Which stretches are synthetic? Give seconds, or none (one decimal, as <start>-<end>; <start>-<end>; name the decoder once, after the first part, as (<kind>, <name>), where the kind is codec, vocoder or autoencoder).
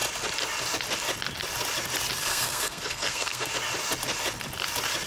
2.3-3.5 (codec, SNAC)